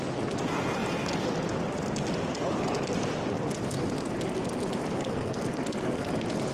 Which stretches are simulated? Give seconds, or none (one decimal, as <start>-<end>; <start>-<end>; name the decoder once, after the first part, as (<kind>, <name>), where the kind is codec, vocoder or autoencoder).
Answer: 5.0-6.1 (codec, SNAC)